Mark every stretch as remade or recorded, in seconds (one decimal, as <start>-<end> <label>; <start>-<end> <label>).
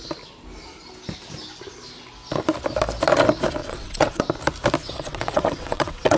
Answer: 0.0-3.6 recorded; 3.6-4.2 remade; 4.2-4.8 recorded; 4.8-6.2 remade